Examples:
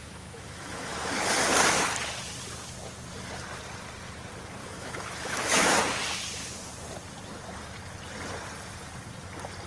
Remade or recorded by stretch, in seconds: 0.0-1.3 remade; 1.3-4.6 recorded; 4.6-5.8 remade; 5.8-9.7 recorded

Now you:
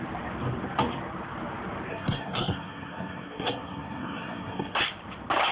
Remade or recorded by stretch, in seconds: 0.0-1.9 recorded; 1.9-4.8 remade; 4.8-5.5 recorded

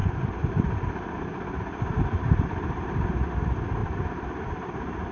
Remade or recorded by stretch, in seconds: 0.0-3.1 remade; 3.1-3.8 recorded; 3.8-5.1 remade

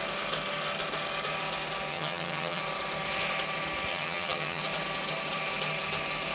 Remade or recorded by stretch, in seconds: 0.0-1.9 recorded; 1.9-2.6 remade; 2.6-3.9 recorded; 3.9-4.6 remade; 4.6-6.3 recorded

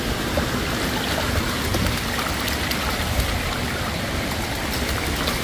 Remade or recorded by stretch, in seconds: 0.0-5.4 recorded

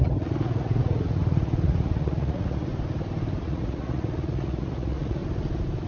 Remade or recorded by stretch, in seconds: 0.0-2.7 remade; 2.7-3.4 recorded; 3.4-5.2 remade; 5.2-5.9 recorded

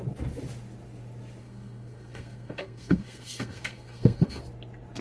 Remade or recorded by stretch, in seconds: 0.0-1.4 recorded; 1.4-4.4 remade; 4.4-5.0 recorded

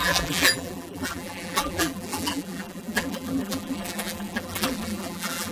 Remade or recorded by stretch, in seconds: 0.0-5.5 remade